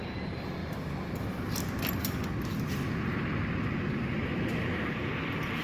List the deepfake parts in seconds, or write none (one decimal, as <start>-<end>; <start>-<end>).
0.0-0.6; 4.0-5.6